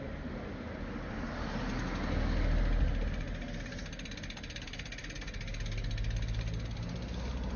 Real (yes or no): yes